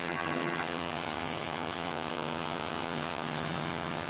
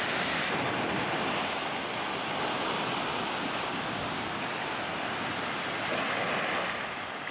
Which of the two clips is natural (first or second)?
second